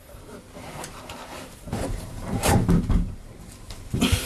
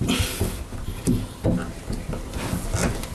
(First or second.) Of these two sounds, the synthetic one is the first